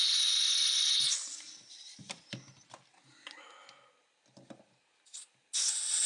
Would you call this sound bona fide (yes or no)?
yes